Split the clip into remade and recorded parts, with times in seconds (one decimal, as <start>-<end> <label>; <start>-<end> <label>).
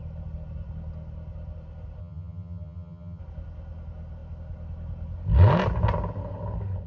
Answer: 0.0-2.0 recorded; 2.0-3.2 remade; 3.2-6.9 recorded